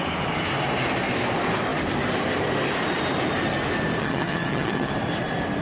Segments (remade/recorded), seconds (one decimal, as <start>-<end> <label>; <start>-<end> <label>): 0.0-4.0 recorded; 4.0-4.9 remade; 4.9-5.6 recorded